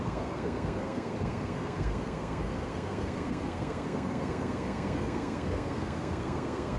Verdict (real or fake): fake